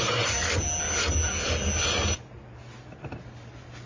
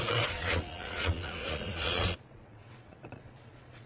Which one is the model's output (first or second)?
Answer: second